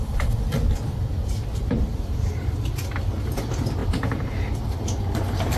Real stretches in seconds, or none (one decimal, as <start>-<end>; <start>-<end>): 0.0-1.5; 2.7-3.8; 4.6-5.6